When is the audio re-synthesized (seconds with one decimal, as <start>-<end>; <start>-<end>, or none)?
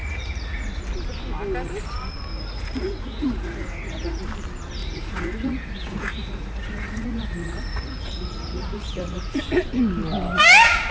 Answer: 0.0-0.8; 2.3-4.2; 4.8-9.4